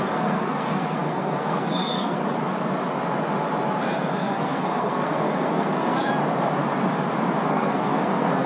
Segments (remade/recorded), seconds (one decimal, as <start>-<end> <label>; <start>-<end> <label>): 0.0-2.2 remade; 2.2-3.8 recorded; 3.8-6.1 remade; 6.1-7.5 recorded; 7.5-8.5 remade